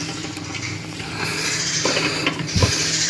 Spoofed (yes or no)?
yes